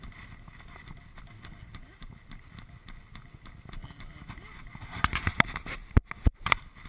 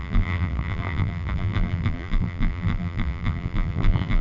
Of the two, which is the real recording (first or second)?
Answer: first